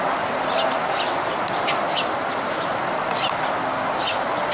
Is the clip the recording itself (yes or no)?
yes